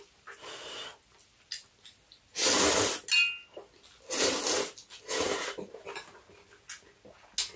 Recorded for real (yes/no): yes